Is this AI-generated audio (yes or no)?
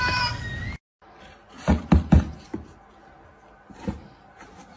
no